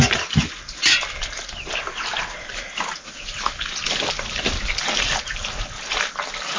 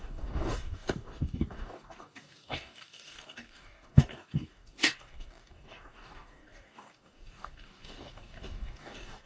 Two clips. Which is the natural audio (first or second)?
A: first